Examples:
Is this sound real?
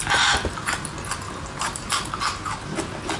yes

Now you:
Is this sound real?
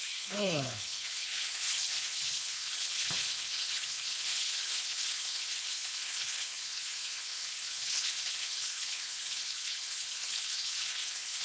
no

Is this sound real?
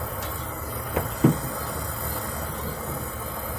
yes